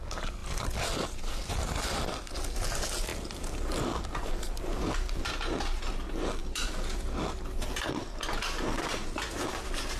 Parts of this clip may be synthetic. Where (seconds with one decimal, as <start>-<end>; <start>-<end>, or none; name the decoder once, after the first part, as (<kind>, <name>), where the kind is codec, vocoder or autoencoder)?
0.4-2.3 (vocoder, BigVGAN v2); 3.1-5.3; 6.4-9.5